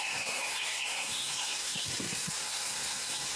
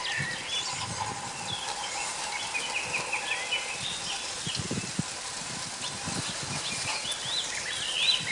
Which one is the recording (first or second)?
second